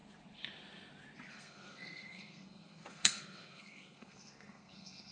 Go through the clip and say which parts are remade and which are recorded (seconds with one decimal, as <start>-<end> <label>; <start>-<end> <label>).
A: 0.0-1.3 recorded; 1.3-5.1 remade